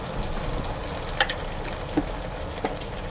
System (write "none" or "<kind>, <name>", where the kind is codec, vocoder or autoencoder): none